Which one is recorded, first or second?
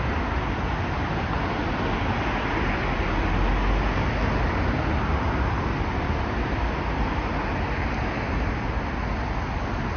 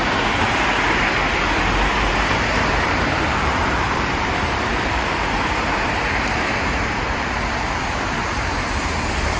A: first